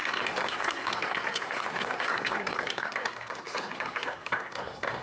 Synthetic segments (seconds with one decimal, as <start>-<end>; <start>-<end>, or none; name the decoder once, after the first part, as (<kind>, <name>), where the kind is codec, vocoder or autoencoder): 0.0-5.0 (codec, SNAC)